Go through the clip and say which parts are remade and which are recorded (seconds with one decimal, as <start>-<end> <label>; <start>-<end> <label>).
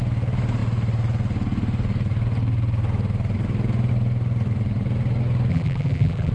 0.0-5.5 recorded; 5.5-6.3 remade